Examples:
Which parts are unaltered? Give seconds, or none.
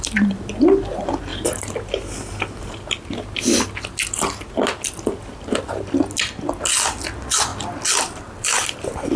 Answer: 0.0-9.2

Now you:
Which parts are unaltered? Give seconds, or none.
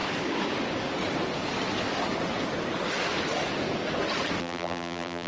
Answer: 0.0-4.4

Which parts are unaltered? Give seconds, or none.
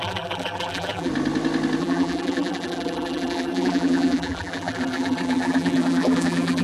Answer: 1.1-1.8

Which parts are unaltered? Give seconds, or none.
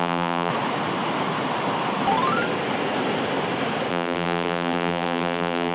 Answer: 0.5-3.9